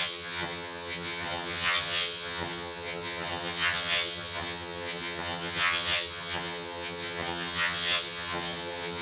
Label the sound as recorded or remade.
remade